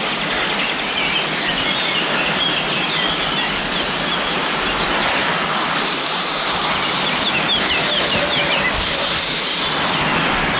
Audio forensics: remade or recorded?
recorded